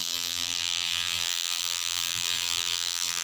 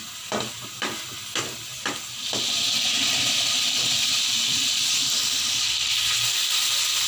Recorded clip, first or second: second